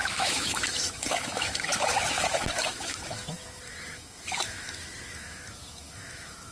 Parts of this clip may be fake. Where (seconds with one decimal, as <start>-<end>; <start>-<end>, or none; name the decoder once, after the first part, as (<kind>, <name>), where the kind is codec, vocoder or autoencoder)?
0.0-6.5 (autoencoder, DAC-VAE)

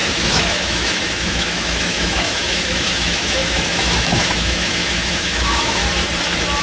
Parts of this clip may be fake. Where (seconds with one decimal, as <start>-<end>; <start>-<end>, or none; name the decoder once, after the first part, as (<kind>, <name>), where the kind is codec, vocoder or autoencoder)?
0.0-5.8 (autoencoder, DAC-VAE)